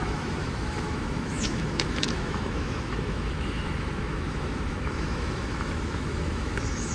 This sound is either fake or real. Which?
fake